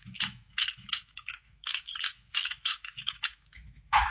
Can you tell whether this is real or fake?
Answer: fake